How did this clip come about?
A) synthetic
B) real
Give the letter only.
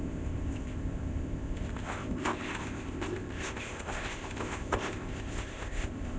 A